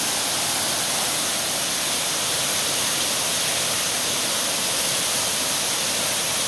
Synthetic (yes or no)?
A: no